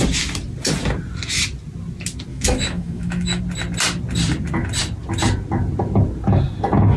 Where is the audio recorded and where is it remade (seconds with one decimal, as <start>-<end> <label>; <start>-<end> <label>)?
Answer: 0.0-2.3 recorded; 2.3-3.4 remade; 3.4-7.0 recorded